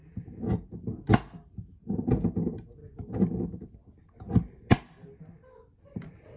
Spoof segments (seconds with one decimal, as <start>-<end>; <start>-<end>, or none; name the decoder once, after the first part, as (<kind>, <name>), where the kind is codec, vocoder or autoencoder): none